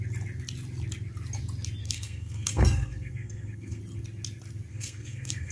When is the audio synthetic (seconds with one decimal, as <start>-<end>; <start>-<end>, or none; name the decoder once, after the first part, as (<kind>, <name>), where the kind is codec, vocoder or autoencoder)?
1.8-3.8 (codec, SNAC); 4.7-5.5